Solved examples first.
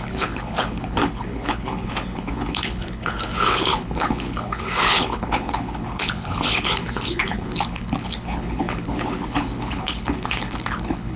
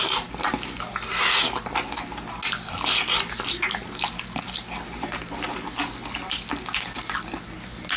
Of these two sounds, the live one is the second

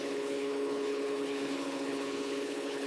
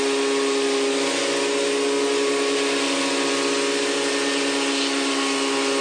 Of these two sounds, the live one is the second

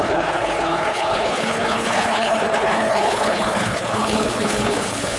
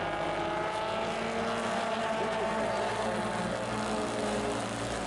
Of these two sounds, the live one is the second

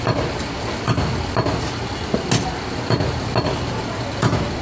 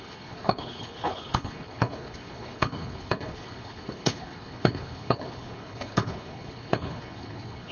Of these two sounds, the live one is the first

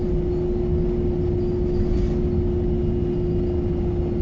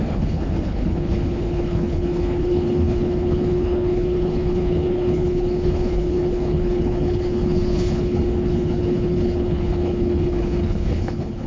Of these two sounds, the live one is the first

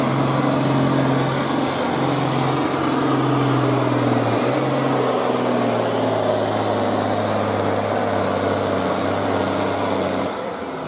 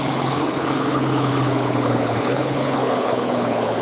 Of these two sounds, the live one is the first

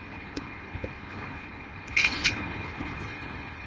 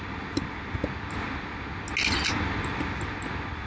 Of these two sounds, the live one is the second